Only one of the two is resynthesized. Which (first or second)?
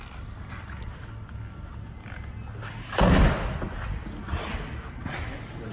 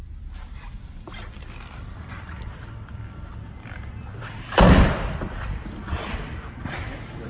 second